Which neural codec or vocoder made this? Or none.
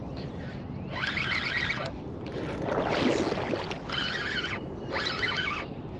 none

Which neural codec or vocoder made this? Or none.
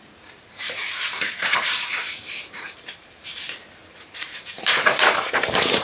vocoder, BigVGAN v2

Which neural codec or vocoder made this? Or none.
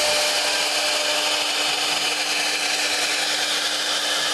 none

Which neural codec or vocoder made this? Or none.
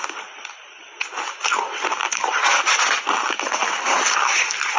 none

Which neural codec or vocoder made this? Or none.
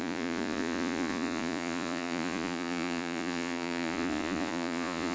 vocoder, Vocos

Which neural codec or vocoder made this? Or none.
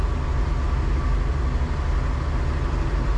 none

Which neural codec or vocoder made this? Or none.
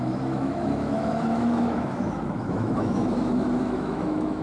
autoencoder, DAC-VAE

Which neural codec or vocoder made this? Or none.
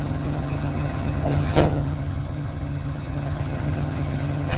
vocoder, HiFi-GAN